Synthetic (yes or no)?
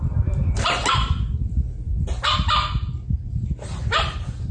no